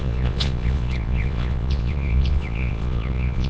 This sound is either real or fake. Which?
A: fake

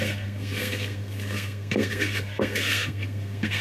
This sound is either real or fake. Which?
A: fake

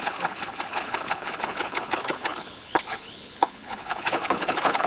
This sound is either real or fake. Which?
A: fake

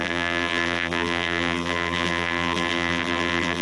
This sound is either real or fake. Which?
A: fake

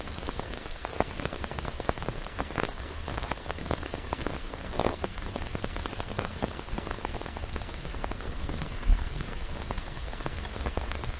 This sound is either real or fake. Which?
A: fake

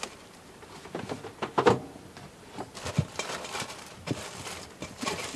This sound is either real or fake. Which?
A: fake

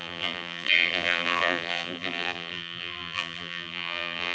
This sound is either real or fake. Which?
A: fake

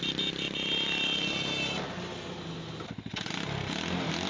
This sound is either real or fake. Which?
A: real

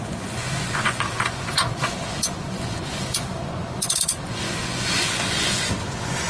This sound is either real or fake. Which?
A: fake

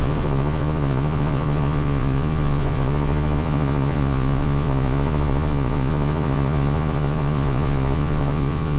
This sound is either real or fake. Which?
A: fake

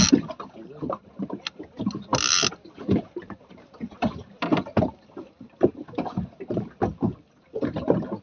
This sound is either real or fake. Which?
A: real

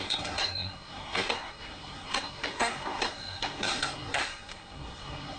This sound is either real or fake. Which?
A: fake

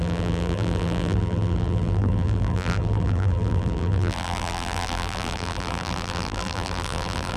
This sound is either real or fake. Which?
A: fake